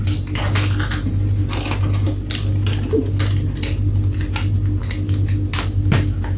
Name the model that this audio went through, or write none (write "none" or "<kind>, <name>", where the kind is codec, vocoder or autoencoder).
none